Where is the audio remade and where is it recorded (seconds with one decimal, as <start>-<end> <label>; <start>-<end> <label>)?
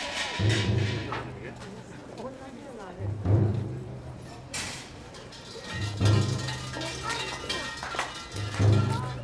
0.0-5.8 remade; 5.8-9.2 recorded